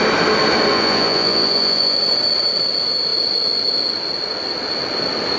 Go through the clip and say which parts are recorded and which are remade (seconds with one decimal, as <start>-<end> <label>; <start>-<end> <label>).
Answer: 0.0-0.7 recorded; 0.7-2.0 remade; 2.0-5.4 recorded